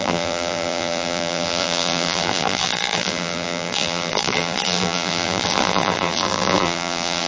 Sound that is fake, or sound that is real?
fake